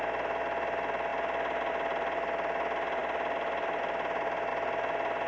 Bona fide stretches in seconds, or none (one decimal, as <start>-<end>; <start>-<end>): 0.0-5.3